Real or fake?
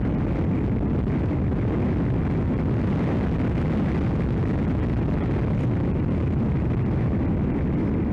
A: real